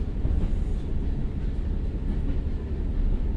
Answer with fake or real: real